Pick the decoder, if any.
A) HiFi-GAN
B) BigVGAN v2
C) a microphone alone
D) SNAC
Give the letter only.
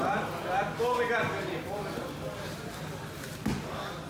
C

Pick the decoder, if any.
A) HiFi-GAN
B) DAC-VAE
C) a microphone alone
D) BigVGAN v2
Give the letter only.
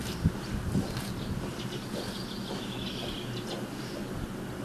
C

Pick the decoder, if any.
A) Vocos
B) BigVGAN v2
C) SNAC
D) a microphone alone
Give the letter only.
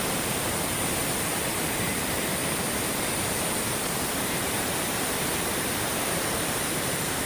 B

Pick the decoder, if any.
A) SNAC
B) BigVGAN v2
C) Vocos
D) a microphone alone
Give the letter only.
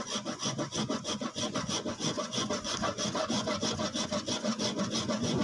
C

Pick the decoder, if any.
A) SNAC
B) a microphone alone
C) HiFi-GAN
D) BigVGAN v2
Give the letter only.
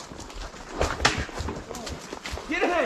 B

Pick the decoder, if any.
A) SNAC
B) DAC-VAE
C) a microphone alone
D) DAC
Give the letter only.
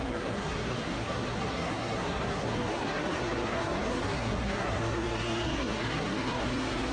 A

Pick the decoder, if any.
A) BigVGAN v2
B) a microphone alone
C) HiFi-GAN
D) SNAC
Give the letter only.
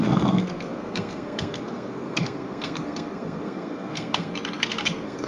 D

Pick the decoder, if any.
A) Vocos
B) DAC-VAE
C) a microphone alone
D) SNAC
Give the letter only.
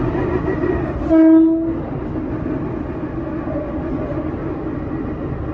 C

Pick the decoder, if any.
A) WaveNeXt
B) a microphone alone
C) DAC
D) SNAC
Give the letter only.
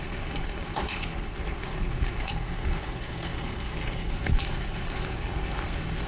D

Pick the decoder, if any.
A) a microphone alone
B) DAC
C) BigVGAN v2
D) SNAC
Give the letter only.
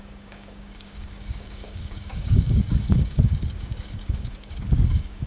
B